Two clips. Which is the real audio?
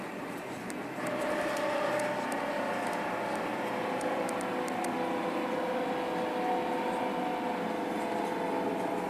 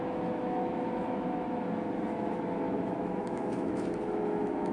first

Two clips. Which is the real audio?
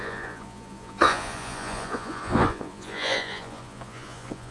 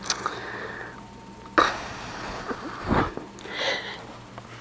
second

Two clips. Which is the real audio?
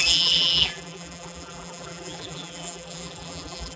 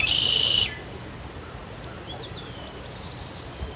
second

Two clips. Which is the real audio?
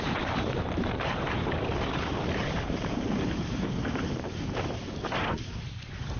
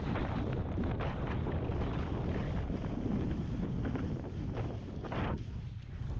second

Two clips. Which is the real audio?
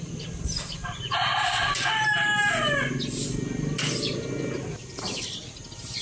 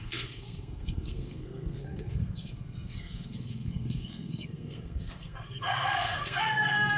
first